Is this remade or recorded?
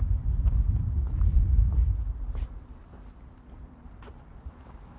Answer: recorded